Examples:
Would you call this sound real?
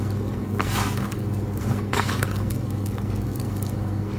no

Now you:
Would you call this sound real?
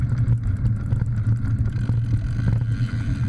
yes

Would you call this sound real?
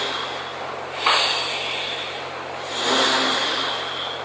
yes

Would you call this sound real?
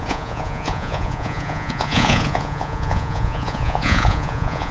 no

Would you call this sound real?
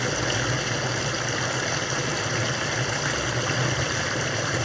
yes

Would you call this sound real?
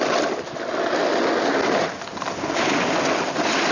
yes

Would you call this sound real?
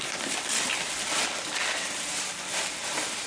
yes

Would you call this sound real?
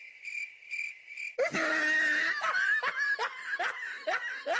yes